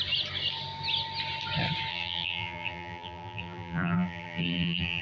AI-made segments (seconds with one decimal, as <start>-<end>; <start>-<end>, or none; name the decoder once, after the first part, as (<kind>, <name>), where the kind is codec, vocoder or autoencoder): 1.9-5.0 (vocoder, BigVGAN v2)